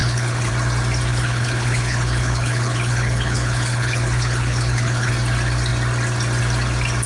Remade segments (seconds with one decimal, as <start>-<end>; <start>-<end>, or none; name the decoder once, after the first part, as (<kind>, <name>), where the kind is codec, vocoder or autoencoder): 0.0-0.5 (codec, HILCodec); 1.1-5.1